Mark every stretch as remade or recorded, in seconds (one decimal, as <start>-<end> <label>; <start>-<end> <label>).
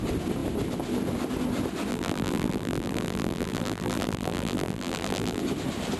0.0-1.9 recorded; 1.9-5.4 remade; 5.4-6.0 recorded